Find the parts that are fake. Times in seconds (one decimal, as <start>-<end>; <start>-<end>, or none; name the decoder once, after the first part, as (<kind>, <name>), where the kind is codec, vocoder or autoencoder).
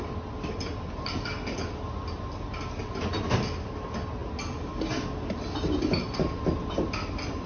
none